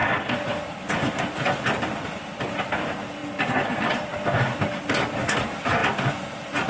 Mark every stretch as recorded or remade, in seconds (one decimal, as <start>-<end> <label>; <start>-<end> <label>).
0.0-6.7 recorded